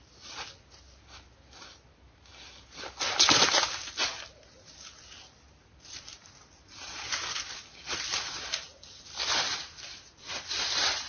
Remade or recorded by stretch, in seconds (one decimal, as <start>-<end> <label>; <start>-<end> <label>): 0.0-11.1 recorded